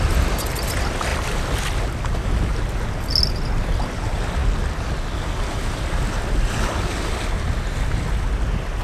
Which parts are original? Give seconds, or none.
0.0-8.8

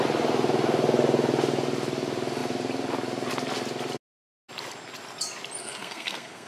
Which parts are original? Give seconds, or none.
0.0-5.6